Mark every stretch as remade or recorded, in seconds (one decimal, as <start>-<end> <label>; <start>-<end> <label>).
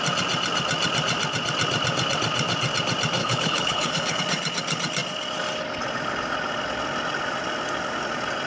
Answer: 0.0-3.2 recorded; 3.2-4.2 remade; 4.2-8.5 recorded